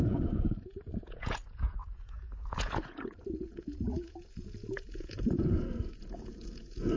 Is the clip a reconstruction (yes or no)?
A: yes